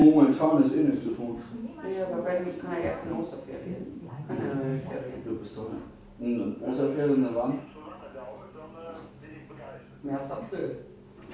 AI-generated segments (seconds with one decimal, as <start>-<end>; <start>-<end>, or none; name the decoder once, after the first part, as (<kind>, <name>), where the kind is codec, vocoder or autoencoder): 2.2-3.7 (vocoder, Vocos)